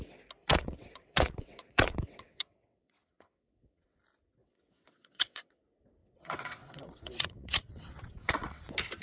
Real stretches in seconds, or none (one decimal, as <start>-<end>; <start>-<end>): 0.0-0.4; 4.0-4.4; 5.6-6.0; 8.6-9.0